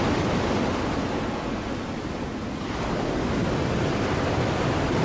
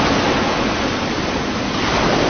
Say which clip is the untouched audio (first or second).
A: first